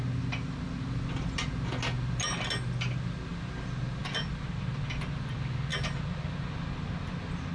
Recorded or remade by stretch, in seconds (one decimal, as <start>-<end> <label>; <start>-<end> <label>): 0.0-7.5 recorded